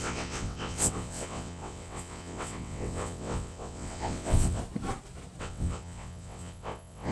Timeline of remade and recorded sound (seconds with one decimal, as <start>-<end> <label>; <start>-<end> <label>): 0.0-4.6 remade; 4.6-5.4 recorded; 5.4-7.1 remade